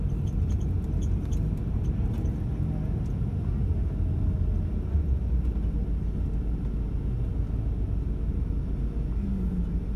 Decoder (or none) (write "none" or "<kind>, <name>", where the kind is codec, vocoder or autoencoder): none